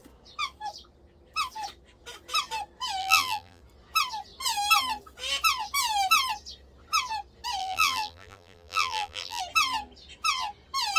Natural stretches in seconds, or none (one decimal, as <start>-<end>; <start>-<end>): 0.0-3.0; 3.6-7.6; 9.4-11.0